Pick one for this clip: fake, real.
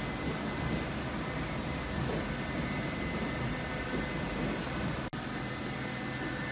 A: real